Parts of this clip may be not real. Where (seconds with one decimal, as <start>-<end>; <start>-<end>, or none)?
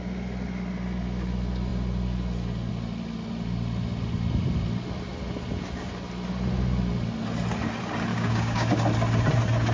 8.1-8.7